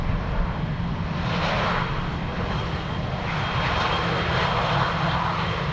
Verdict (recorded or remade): recorded